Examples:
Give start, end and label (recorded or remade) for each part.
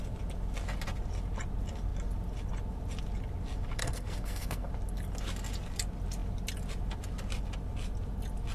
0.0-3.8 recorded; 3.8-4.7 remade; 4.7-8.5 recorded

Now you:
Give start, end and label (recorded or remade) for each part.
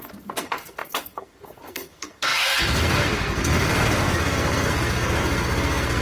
0.0-6.0 remade